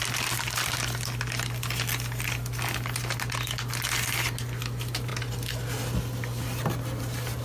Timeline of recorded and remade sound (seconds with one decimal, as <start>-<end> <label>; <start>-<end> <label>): 0.0-7.4 recorded